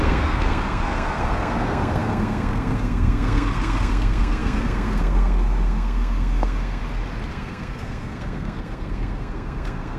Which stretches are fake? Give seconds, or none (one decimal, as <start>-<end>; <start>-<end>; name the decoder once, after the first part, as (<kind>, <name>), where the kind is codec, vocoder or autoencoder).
0.0-6.8 (codec, SNAC); 7.3-10.0